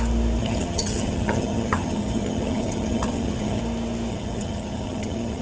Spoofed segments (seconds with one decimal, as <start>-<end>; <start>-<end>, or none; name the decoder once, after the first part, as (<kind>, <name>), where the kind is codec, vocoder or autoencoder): 0.4-3.6 (vocoder, HiFi-GAN); 4.1-5.4

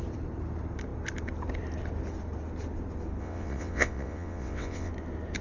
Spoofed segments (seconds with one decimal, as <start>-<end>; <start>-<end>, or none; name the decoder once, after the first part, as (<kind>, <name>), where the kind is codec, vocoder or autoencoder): 3.2-4.9 (vocoder, WaveNeXt)

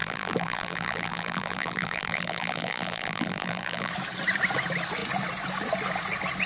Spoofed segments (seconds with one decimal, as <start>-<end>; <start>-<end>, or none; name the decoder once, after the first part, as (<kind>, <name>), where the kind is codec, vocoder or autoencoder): 0.0-3.9 (vocoder, BigVGAN v2)